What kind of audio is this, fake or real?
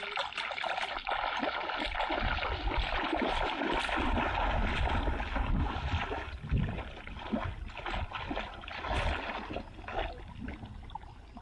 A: real